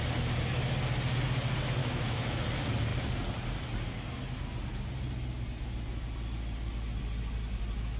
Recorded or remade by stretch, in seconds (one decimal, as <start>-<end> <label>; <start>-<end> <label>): 0.0-1.8 recorded; 1.8-2.4 remade; 2.4-8.0 recorded

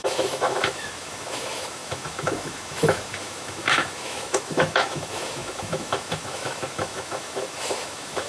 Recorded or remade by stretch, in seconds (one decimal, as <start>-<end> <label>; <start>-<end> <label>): 0.0-8.3 remade

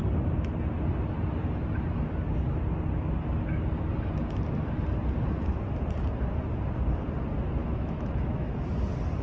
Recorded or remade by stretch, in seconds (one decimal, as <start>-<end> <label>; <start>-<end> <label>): 0.0-7.6 recorded; 7.6-8.5 remade; 8.5-9.2 recorded

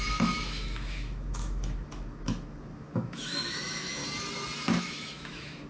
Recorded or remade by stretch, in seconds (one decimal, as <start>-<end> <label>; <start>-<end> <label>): 0.0-4.0 remade; 4.0-4.8 recorded; 4.8-5.7 remade

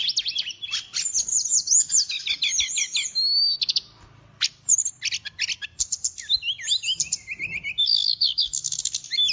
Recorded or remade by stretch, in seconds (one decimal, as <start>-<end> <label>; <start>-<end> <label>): 0.0-7.9 recorded; 7.9-8.8 remade; 8.8-9.3 recorded

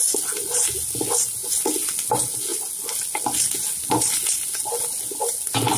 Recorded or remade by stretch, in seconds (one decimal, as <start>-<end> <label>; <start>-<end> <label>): 0.0-5.8 recorded

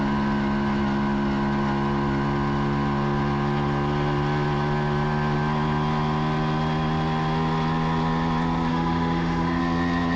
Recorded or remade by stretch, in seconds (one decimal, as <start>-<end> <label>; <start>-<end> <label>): 0.0-8.7 recorded; 8.7-9.6 remade; 9.6-10.2 recorded